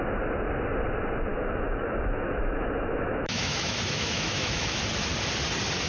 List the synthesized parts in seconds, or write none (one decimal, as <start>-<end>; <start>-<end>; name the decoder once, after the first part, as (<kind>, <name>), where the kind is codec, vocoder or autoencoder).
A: 1.3-4.8 (autoencoder, DAC-VAE)